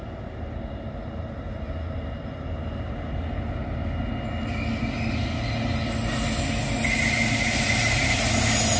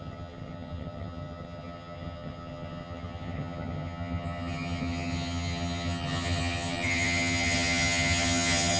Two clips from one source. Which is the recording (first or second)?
first